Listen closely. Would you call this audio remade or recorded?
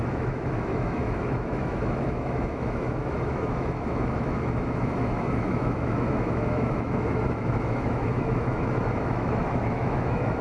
remade